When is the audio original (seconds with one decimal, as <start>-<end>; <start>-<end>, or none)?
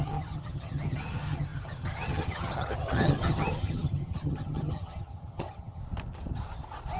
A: 5.8-7.0